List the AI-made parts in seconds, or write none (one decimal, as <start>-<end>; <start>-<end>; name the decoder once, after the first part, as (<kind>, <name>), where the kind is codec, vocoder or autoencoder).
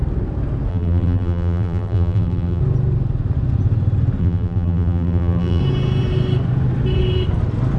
0.7-2.6 (vocoder, BigVGAN v2); 4.2-5.6